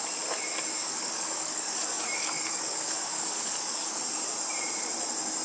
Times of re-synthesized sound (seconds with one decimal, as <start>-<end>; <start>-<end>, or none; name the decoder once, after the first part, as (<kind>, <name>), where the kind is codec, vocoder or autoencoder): 0.8-4.0 (codec, DAC)